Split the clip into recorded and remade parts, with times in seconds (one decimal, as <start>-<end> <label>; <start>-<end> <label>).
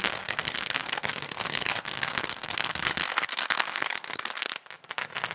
0.0-4.5 remade; 4.5-5.3 recorded